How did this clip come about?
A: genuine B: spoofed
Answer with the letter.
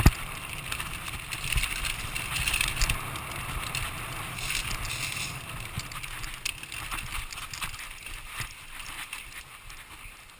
A